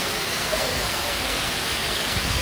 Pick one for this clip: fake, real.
fake